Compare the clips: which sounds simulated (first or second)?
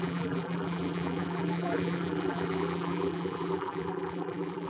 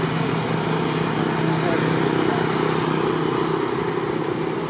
first